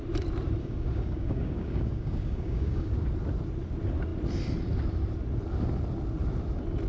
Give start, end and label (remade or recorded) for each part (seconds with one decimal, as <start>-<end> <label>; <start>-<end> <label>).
0.0-0.6 recorded; 0.6-2.9 remade; 2.9-6.9 recorded

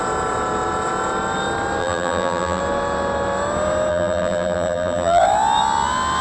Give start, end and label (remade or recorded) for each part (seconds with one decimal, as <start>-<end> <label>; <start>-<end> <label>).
0.0-1.8 recorded; 1.8-2.6 remade; 2.6-3.9 recorded; 3.9-5.2 remade; 5.2-6.2 recorded

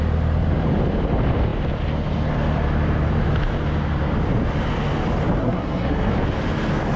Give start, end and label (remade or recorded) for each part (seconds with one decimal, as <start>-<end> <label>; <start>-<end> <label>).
0.0-5.4 recorded; 5.4-6.1 remade; 6.1-7.0 recorded